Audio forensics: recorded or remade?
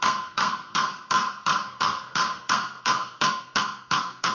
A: remade